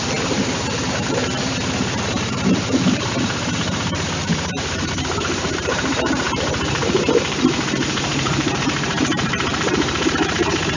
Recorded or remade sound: remade